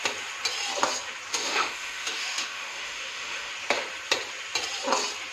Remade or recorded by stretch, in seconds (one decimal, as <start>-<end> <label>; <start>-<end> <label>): 0.0-1.3 recorded; 1.3-3.5 remade; 3.5-5.3 recorded